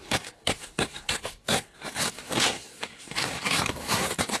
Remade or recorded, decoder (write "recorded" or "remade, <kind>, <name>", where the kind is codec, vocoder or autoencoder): remade, codec, SNAC